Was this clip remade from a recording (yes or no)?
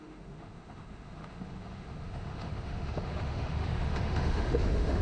yes